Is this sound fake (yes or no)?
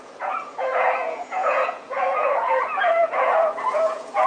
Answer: yes